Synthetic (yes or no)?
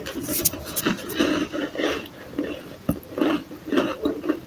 no